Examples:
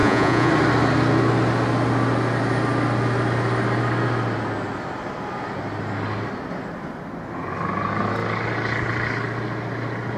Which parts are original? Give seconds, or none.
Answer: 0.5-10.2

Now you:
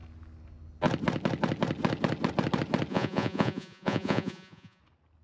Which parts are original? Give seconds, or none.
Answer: 0.0-2.9; 4.8-5.2

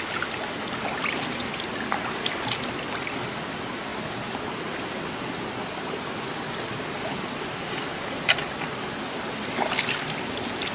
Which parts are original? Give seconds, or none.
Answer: 0.0-10.7